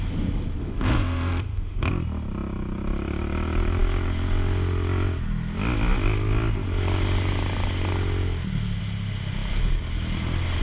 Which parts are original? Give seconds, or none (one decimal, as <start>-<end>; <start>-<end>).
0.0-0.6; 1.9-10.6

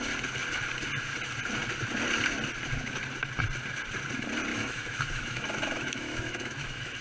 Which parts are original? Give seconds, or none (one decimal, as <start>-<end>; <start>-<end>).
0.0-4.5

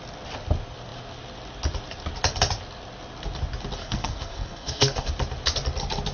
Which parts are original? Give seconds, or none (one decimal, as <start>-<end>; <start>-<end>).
0.0-3.8; 5.1-6.1